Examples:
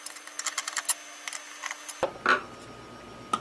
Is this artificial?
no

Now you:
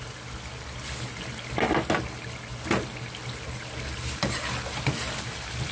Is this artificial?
no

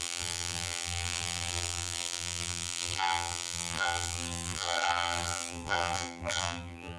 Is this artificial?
yes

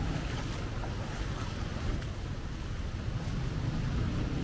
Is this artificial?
no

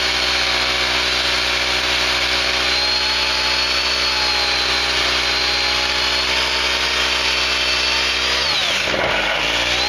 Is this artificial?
no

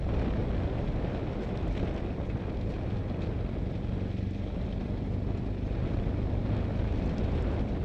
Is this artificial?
no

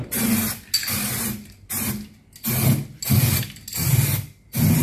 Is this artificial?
no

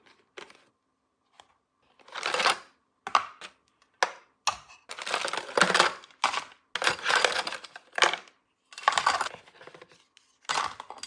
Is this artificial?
no